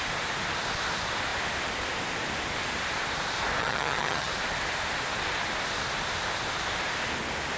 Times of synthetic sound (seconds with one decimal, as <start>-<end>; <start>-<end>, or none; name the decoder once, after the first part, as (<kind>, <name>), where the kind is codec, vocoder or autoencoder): 3.6-4.3 (vocoder, HiFi-GAN)